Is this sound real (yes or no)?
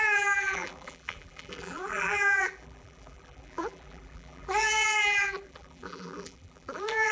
no